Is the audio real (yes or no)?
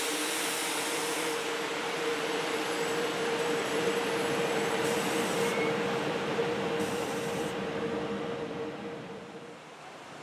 no